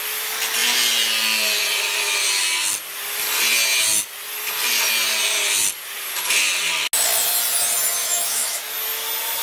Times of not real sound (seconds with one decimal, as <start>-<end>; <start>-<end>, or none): 8.0-8.7